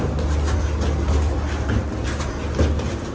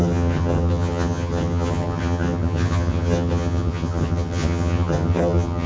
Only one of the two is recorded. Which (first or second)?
first